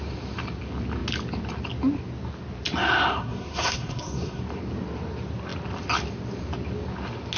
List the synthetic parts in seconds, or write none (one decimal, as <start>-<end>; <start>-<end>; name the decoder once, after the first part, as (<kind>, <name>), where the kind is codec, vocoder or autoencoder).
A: 3.1-4.4 (codec, SNAC)